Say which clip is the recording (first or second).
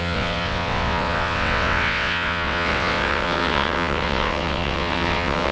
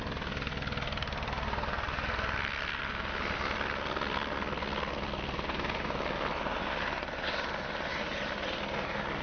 second